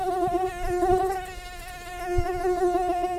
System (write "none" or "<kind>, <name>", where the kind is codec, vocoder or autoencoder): none